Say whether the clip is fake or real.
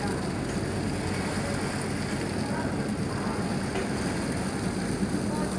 real